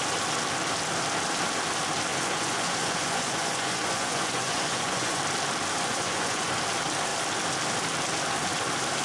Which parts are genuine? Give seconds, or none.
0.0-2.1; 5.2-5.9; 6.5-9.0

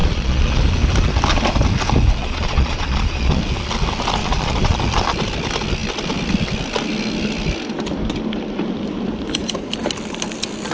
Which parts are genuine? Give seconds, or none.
0.6-2.2; 3.4-4.2; 4.8-10.7